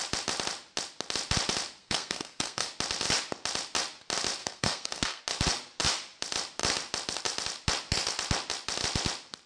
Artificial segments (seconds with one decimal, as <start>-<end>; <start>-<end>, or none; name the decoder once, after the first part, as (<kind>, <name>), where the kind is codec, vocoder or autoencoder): 1.8-2.7 (codec, SNAC); 4.4-5.2